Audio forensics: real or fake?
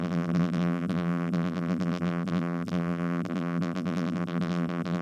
fake